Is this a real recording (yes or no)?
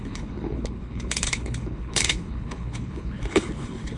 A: no